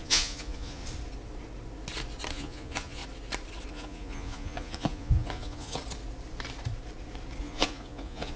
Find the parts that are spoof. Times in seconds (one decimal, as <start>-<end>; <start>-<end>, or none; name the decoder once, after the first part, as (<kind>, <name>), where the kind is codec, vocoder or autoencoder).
0.0-0.8 (vocoder, Vocos); 2.3-3.0; 3.7-5.8; 7.4-8.4